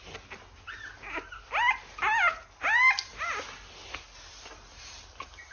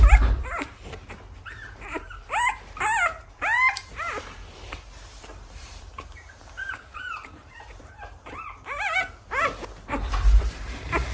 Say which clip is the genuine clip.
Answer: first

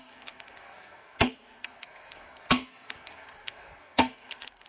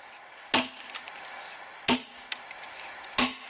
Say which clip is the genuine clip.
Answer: second